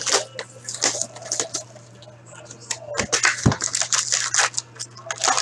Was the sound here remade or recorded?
recorded